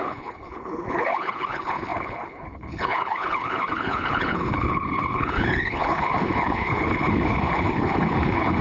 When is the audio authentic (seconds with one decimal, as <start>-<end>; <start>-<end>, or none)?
none